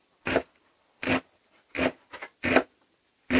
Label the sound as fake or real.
real